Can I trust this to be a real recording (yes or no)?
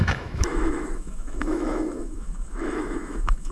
no